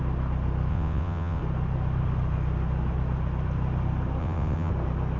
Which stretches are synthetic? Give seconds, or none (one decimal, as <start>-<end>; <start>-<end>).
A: 0.7-1.4; 4.2-4.7